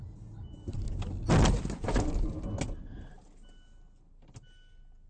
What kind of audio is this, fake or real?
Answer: real